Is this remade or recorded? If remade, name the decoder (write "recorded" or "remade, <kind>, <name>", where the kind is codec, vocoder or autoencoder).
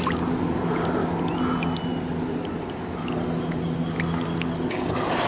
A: recorded